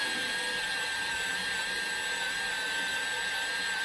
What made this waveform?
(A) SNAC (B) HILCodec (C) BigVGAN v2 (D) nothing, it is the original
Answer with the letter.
D